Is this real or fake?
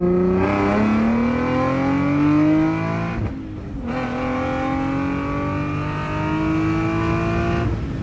real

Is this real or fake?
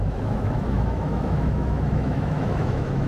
fake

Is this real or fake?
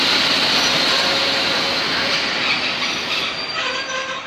real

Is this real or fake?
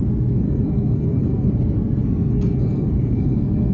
fake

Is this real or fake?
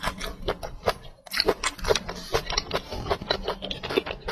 real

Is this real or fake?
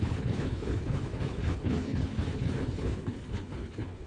fake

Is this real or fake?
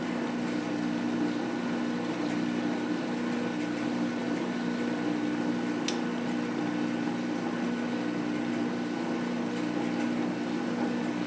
real